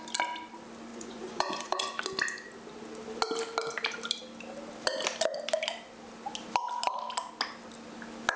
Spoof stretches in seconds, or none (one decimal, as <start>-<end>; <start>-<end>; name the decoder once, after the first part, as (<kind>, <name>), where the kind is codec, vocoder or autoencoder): 0.9-2.0 (vocoder, Vocos)